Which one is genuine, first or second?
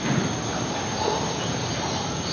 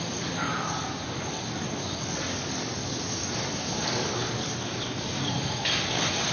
first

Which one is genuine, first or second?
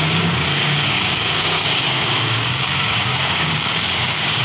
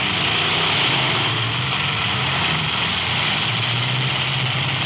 second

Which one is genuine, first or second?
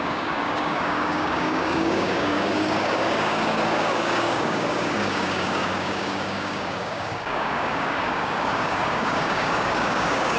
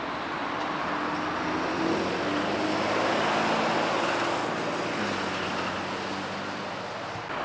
second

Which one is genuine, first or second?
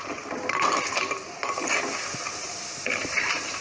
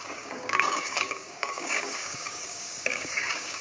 first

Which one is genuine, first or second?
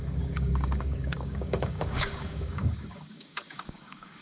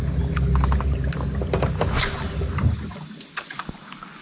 second